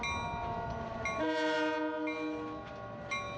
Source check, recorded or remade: recorded